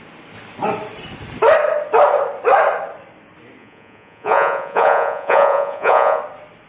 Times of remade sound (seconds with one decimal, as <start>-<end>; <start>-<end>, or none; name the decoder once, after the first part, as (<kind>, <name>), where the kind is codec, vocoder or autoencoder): 3.6-6.2 (vocoder, Vocos)